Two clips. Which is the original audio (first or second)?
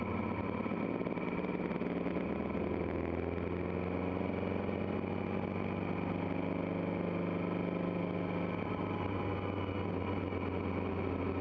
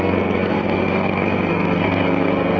first